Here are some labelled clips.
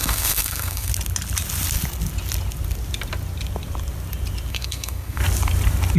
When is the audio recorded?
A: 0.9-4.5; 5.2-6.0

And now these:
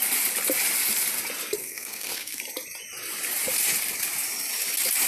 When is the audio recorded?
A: 0.0-1.6; 2.4-5.1

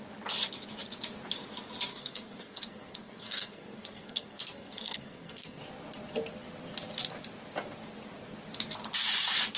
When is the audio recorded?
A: 0.0-1.9; 5.6-9.6

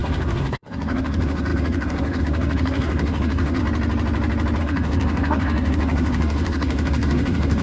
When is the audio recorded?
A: 3.6-4.6

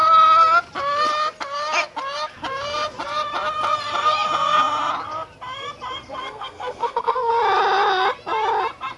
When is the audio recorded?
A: 0.0-6.0; 7.3-9.0

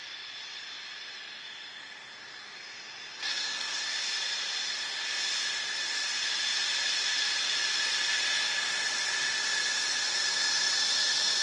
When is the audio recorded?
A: 0.0-3.2; 3.8-11.4

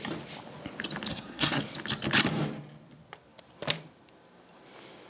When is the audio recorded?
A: 0.0-1.1; 1.6-5.1